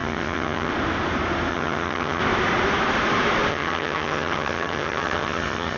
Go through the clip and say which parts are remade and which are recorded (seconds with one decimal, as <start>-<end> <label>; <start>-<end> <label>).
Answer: 0.0-0.7 remade; 0.7-1.5 recorded; 1.5-2.2 remade; 2.2-3.5 recorded; 3.5-5.8 remade